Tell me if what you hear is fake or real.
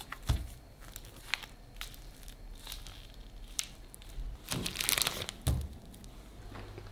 real